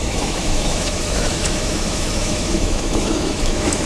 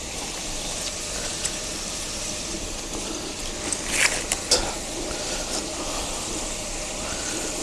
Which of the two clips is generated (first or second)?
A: first